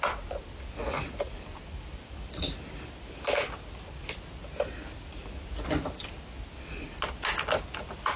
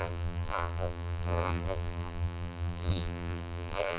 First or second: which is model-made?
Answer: second